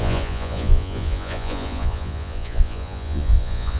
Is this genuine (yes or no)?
no